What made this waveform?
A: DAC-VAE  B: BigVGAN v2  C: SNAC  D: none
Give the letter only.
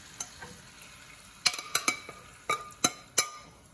D